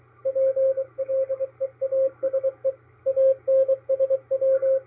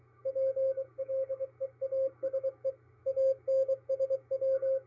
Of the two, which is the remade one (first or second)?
second